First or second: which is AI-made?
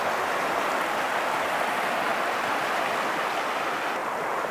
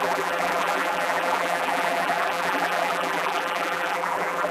second